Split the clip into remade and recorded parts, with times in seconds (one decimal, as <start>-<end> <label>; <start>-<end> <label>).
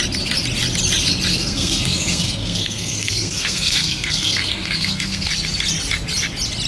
0.0-1.3 recorded; 1.3-5.3 remade; 5.3-6.7 recorded